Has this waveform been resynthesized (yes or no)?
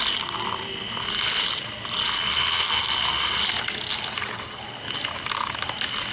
no